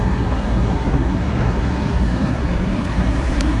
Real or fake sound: fake